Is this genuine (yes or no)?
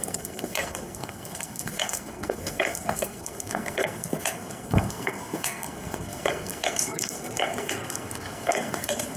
no